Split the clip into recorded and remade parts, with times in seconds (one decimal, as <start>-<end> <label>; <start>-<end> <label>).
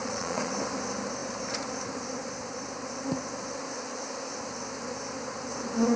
0.0-0.5 remade; 0.5-6.0 recorded